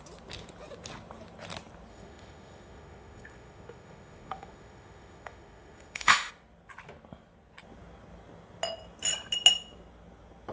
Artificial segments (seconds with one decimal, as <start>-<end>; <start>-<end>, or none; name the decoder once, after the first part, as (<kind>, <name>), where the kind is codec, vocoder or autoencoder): 1.9-6.3 (autoencoder, DAC-VAE)